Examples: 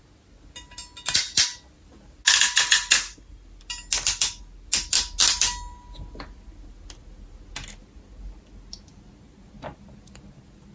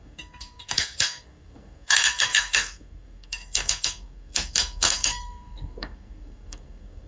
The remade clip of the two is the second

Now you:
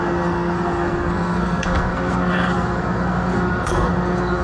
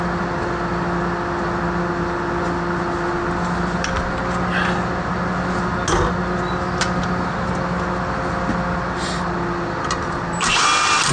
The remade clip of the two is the first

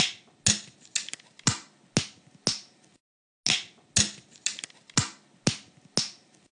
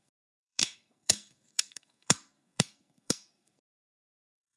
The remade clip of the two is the second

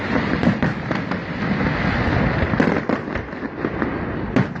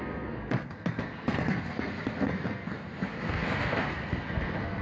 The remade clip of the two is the second